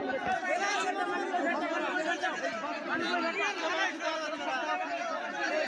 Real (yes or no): yes